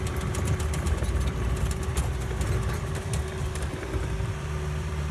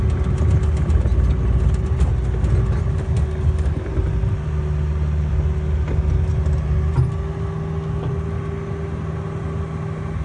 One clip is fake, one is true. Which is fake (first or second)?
first